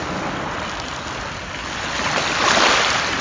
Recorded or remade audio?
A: recorded